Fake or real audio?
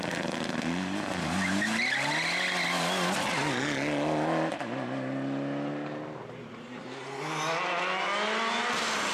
real